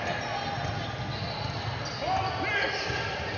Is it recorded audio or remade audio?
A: recorded